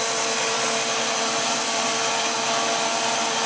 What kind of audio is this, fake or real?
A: real